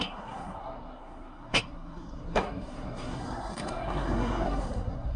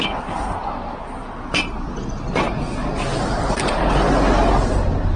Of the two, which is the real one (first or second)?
second